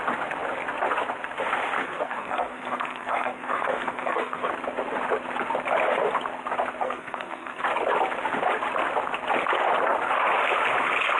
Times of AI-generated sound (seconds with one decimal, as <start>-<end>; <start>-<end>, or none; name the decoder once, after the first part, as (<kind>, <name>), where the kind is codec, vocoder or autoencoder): 1.8-4.5 (codec, SNAC); 6.8-7.6